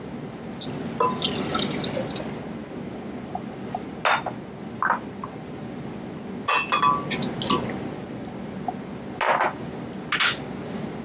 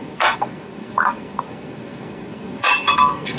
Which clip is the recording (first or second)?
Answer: first